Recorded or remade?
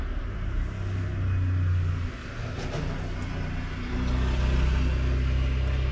recorded